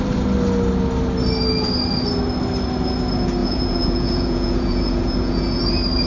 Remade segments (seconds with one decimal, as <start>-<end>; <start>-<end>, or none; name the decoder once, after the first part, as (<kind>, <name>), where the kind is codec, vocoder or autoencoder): 3.4-5.6 (vocoder, Vocos)